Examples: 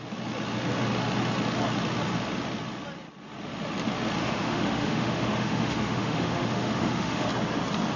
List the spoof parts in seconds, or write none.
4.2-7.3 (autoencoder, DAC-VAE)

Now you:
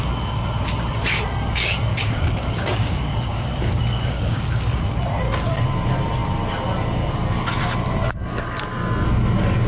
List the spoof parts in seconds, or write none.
1.9-4.8 (codec, DAC)

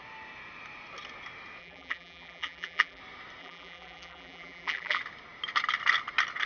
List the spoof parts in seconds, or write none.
1.6-3.0 (vocoder, BigVGAN v2); 3.4-5.0

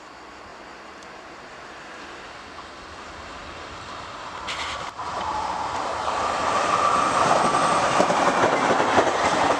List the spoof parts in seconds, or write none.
0.5-2.2 (vocoder, BigVGAN v2); 3.4-5.4

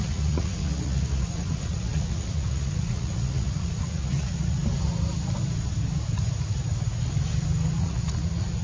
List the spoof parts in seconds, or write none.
0.0-4.6 (vocoder, Vocos); 7.8-8.6